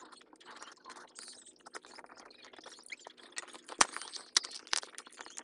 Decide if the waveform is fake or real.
real